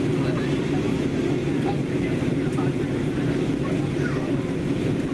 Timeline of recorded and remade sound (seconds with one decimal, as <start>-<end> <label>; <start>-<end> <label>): 0.0-5.1 recorded